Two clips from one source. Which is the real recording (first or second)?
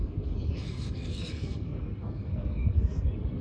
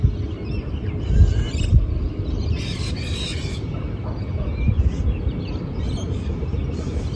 second